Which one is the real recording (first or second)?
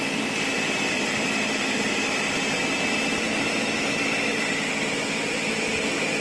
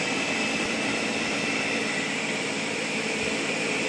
first